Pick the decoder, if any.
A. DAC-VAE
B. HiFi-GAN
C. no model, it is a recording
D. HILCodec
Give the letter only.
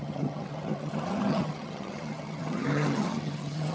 B